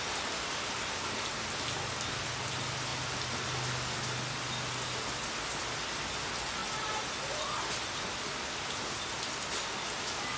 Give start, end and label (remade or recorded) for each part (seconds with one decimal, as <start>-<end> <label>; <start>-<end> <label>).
0.0-10.4 recorded